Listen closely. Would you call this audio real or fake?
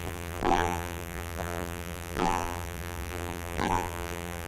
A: fake